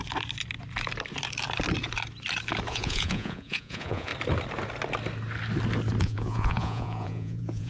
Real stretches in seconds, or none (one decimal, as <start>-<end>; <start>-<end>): 0.0-2.7; 4.1-6.0